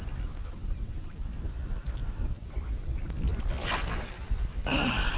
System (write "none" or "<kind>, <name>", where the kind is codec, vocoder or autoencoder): vocoder, BigVGAN v2